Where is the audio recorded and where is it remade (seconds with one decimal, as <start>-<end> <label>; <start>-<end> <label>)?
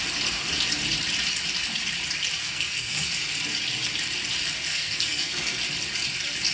0.0-2.4 recorded; 2.4-3.1 remade; 3.1-4.7 recorded; 4.7-5.6 remade; 5.6-6.5 recorded